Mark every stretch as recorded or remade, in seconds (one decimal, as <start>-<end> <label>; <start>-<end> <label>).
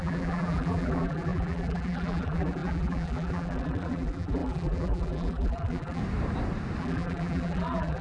0.0-6.0 remade; 6.0-6.8 recorded; 6.8-8.0 remade